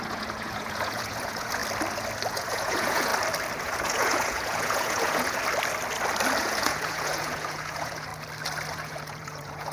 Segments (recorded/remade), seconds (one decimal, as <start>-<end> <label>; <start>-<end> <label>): 0.0-1.6 remade; 1.6-2.3 recorded; 2.3-3.1 remade; 3.1-3.6 recorded; 3.6-5.4 remade; 5.4-6.4 recorded; 6.4-8.1 remade; 8.1-8.7 recorded; 8.7-9.7 remade